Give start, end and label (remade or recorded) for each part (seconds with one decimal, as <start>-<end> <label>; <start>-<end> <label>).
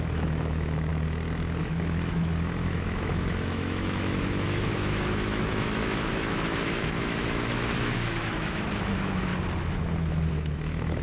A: 0.0-0.9 remade; 0.9-1.6 recorded; 1.6-9.3 remade; 9.3-10.3 recorded; 10.3-11.0 remade